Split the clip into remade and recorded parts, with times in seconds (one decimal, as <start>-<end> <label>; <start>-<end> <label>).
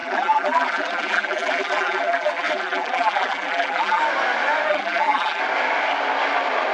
0.0-4.0 remade; 4.0-4.7 recorded; 4.7-5.4 remade; 5.4-6.7 recorded